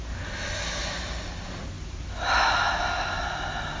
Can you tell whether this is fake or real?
real